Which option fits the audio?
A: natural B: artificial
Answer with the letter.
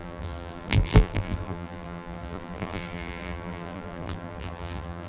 B